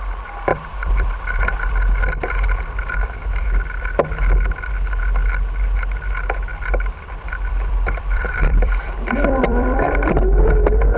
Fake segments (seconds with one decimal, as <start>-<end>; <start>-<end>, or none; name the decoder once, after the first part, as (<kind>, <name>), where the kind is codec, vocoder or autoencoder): 0.5-1.1 (vocoder, BigVGAN v2); 6.5-10.4